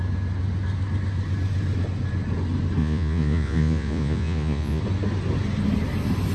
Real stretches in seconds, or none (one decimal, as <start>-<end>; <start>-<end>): 0.0-2.8; 4.8-6.3